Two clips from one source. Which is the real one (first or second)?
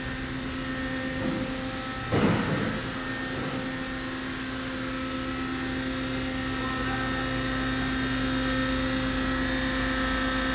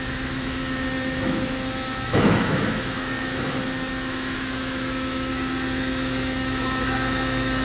first